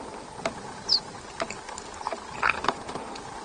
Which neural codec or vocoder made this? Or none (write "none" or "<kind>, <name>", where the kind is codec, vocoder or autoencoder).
none